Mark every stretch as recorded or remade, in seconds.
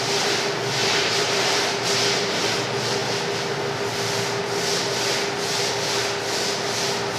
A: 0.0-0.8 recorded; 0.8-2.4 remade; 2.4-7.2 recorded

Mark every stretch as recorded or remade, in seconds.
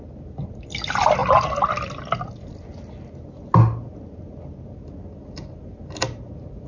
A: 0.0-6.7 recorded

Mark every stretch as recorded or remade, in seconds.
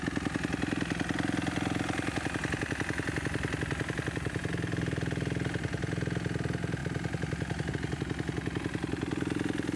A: 0.0-2.4 recorded; 2.4-4.5 remade; 4.5-6.8 recorded; 6.8-7.7 remade; 7.7-9.8 recorded